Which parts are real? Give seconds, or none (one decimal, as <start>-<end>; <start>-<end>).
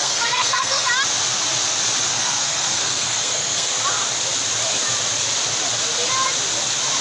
0.9-2.1; 3.7-7.0